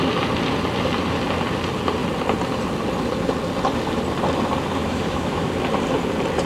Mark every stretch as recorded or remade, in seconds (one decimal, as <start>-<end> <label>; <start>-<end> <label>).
0.0-4.8 recorded; 4.8-5.5 remade; 5.5-6.5 recorded